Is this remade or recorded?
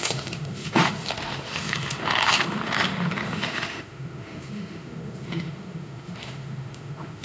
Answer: remade